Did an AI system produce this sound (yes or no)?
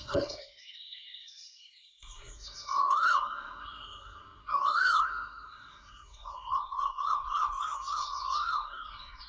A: yes